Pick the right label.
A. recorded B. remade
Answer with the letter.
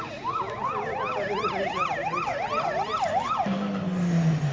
A